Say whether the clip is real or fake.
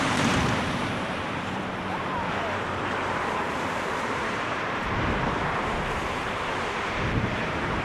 fake